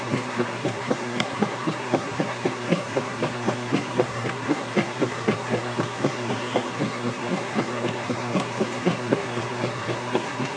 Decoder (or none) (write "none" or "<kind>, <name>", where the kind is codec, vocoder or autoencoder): codec, SNAC